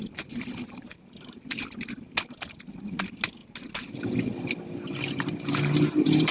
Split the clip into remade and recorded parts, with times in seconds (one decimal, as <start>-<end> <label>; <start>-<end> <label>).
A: 0.0-6.3 recorded